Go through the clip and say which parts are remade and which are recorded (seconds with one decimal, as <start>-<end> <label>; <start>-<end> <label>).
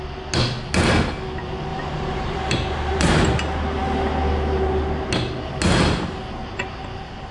0.0-1.7 recorded; 1.7-3.1 remade; 3.1-7.3 recorded